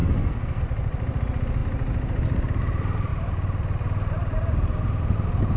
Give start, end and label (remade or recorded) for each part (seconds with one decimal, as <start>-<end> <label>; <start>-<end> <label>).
0.0-0.6 remade; 0.6-5.6 recorded